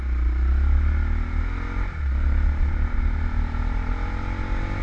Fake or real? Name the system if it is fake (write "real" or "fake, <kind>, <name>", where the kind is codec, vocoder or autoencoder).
real